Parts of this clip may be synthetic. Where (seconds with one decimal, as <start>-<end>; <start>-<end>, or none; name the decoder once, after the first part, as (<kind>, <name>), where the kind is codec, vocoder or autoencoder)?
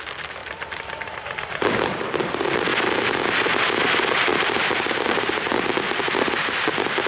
0.0-2.7 (vocoder, BigVGAN v2); 3.8-4.3; 6.0-7.1